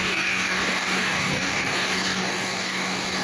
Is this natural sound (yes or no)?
no